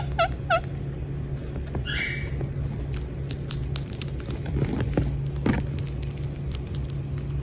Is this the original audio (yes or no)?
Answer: yes